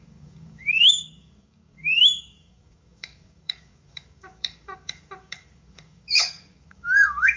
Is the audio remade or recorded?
remade